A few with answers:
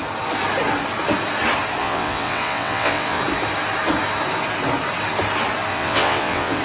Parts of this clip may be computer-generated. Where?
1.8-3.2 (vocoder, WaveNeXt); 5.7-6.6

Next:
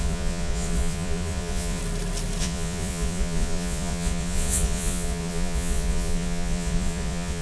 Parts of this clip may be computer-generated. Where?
0.0-1.8 (vocoder, Vocos); 2.4-7.4

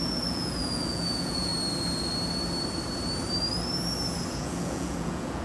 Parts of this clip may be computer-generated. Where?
0.0-1.5 (vocoder, Vocos); 4.3-5.4

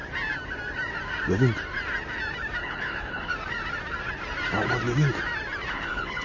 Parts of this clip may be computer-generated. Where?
2.6-3.3 (codec, HILCodec); 5.7-6.2

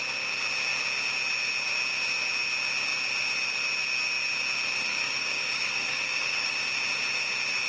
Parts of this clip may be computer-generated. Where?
4.9-6.5 (codec, DAC)

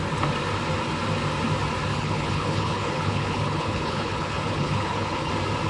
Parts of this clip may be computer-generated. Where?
1.9-5.3 (codec, HILCodec)